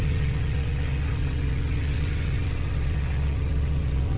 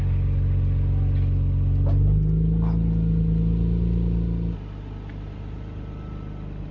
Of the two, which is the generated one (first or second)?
first